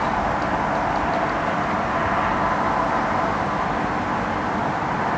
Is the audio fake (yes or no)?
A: no